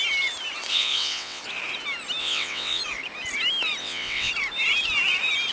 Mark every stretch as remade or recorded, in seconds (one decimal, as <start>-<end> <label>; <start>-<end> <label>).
0.0-0.7 recorded; 0.7-1.4 remade; 1.4-2.2 recorded; 2.2-2.8 remade; 2.8-3.8 recorded; 3.8-4.3 remade; 4.3-5.5 recorded